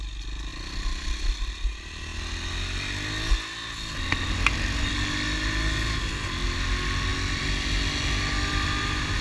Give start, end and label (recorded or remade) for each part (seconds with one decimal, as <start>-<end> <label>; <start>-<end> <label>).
0.0-9.2 recorded